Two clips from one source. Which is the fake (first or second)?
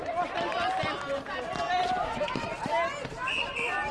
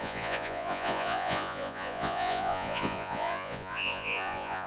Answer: second